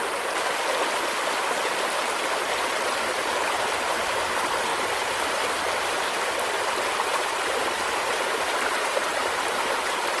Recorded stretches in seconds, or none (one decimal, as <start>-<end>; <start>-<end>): 0.0-2.0; 3.3-4.7; 9.2-10.2